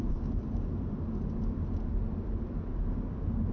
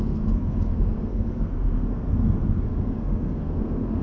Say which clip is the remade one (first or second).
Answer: second